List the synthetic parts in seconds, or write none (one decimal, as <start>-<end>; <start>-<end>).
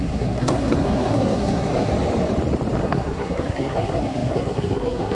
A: 0.0-1.9; 2.8-5.1